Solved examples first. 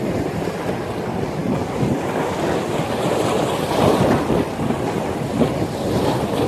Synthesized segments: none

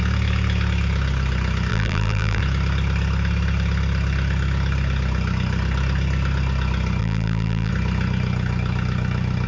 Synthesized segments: 1.7-2.4 (vocoder, BigVGAN v2); 7.0-7.7

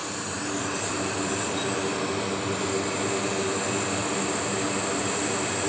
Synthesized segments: 0.0-1.6 (vocoder, BigVGAN v2); 5.0-5.7

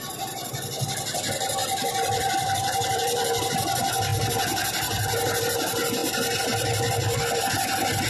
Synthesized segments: 1.6-3.5 (vocoder, BigVGAN v2)

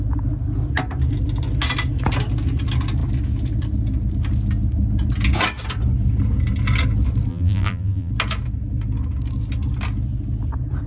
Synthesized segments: 7.3-8.1 (vocoder, BigVGAN v2)